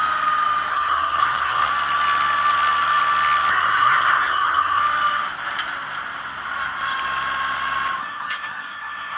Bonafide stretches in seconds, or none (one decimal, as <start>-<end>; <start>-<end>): 0.0-0.7; 1.7-3.5; 4.8-8.0